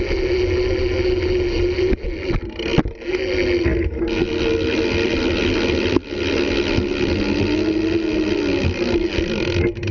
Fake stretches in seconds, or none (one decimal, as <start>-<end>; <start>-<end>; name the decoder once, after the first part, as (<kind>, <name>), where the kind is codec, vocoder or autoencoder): none